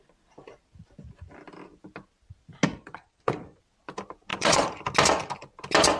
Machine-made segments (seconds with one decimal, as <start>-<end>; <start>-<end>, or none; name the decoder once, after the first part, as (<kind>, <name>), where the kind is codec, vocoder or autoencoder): 2.7-3.6 (vocoder, Vocos); 4.3-4.8